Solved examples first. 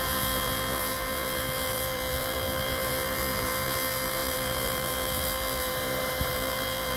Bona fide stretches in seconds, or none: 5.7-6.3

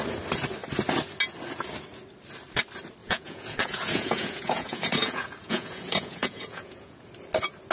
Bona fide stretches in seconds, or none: 0.0-3.0; 7.0-7.7

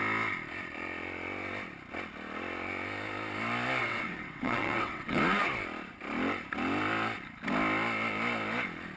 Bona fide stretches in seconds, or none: 0.0-3.8; 5.2-9.0

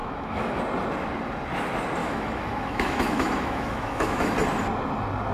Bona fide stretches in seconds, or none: 0.6-2.0; 4.3-5.3

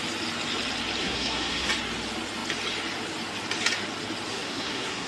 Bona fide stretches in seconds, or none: 0.0-1.0; 1.7-4.3